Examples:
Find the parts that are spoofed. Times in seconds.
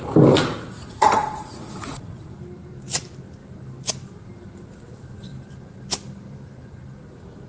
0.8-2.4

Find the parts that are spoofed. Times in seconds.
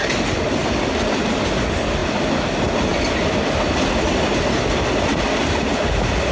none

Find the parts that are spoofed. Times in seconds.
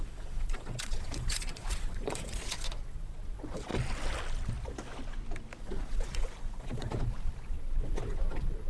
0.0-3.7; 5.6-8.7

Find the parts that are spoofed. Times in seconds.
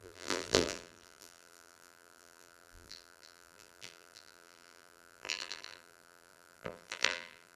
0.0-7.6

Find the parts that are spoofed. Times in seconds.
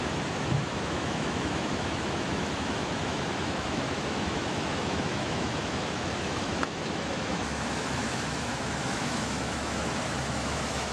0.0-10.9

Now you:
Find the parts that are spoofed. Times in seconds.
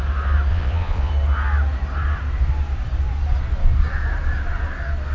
0.5-1.1